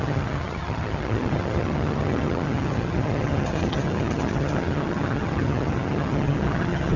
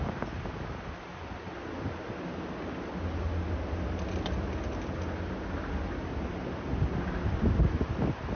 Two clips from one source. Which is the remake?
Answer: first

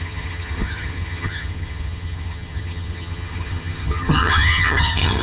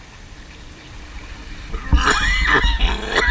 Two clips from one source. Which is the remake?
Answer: first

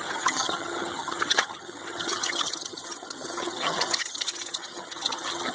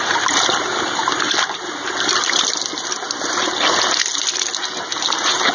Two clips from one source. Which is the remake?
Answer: first